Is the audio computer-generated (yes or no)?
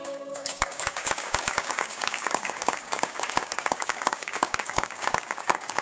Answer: yes